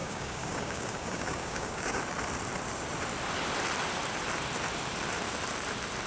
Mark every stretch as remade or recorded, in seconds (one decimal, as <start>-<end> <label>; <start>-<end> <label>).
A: 0.0-2.0 remade; 2.0-6.1 recorded